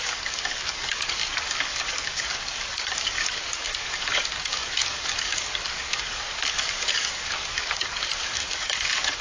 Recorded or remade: remade